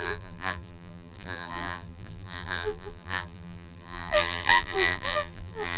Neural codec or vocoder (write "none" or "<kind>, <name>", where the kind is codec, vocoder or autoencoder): vocoder, BigVGAN v2